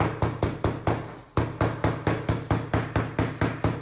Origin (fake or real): real